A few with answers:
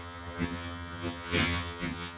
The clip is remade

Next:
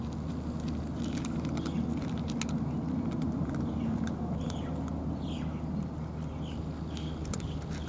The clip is recorded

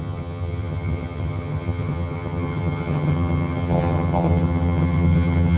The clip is remade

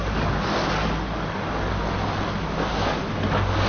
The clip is recorded